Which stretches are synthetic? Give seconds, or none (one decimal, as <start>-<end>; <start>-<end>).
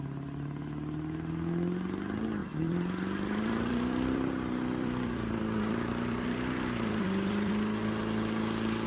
2.4-7.5